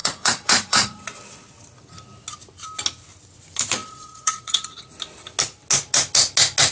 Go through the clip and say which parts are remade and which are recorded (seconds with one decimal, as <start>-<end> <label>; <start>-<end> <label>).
0.0-1.0 remade; 1.0-3.8 recorded; 3.8-4.8 remade; 4.8-6.7 recorded